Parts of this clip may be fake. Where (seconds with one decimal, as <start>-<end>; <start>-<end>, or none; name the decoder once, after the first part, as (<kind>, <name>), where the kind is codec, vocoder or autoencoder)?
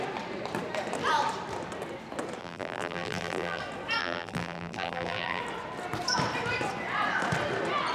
2.4-3.6 (vocoder, BigVGAN v2); 4.0-5.4